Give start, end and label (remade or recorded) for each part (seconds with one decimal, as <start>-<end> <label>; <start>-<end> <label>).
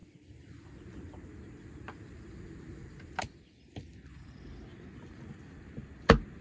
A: 0.0-6.4 recorded